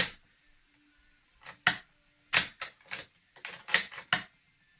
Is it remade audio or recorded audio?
recorded